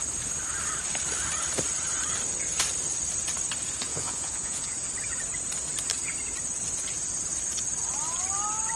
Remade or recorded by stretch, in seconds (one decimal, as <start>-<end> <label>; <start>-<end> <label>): 0.0-3.9 recorded; 3.9-4.7 remade; 4.7-8.8 recorded